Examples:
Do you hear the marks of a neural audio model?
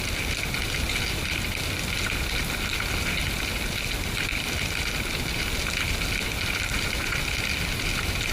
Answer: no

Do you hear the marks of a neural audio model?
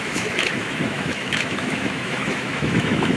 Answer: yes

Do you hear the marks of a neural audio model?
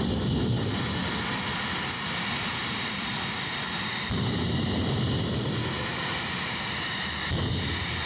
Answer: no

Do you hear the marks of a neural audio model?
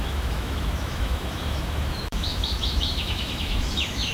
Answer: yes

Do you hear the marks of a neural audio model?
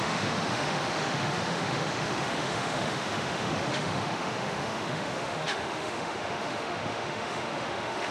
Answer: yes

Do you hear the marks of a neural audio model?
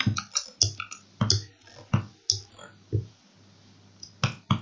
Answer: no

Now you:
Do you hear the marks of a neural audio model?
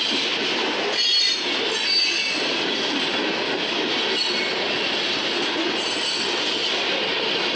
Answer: no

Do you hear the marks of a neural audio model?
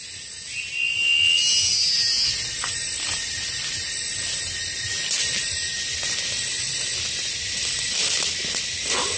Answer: no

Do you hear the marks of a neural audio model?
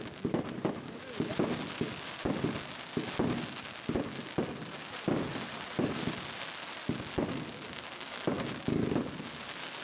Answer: no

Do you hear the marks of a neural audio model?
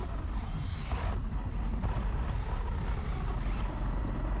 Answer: no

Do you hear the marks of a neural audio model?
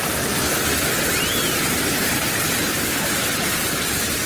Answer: no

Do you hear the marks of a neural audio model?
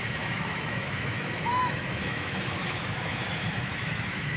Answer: yes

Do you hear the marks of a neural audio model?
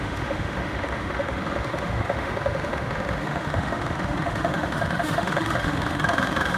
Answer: yes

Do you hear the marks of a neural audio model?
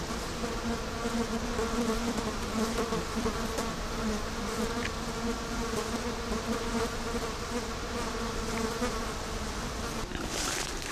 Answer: no